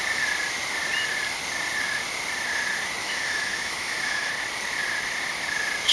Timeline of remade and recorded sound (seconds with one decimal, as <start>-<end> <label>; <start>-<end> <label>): 0.0-3.0 recorded; 3.0-4.3 remade; 4.3-5.9 recorded